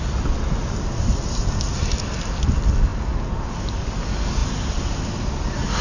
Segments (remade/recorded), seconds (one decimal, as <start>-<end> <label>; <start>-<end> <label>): 0.0-5.8 recorded

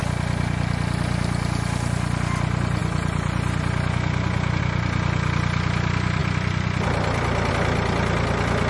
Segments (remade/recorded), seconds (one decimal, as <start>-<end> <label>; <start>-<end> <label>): 0.0-6.2 recorded; 6.2-7.5 remade; 7.5-8.7 recorded

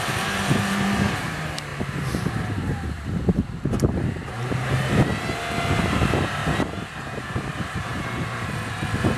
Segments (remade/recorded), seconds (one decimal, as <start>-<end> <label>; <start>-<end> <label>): 0.0-5.1 remade; 5.1-5.8 recorded; 5.8-6.4 remade; 6.4-7.2 recorded; 7.2-7.9 remade; 7.9-9.2 recorded

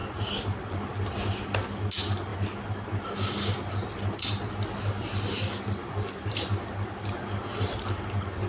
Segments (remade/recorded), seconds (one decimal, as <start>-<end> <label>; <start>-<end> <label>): 0.0-0.9 remade; 0.9-5.8 recorded; 5.8-6.5 remade; 6.5-8.5 recorded

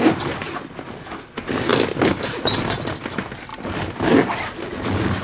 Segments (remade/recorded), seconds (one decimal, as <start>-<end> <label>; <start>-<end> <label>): 0.0-5.2 recorded

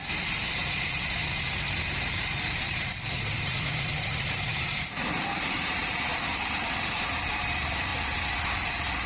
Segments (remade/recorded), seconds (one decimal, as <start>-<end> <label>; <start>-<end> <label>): 0.0-7.9 remade; 7.9-9.1 recorded